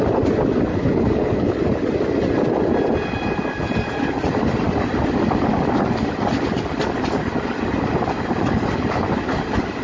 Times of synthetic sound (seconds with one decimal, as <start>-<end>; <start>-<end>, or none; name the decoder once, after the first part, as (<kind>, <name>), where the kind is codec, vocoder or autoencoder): 0.7-1.5 (codec, HILCodec)